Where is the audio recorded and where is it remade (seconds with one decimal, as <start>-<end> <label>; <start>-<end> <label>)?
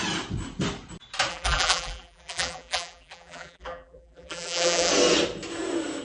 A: 0.0-1.3 recorded; 1.3-4.9 remade; 4.9-6.0 recorded